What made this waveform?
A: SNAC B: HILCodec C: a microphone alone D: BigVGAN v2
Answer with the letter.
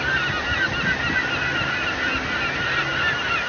C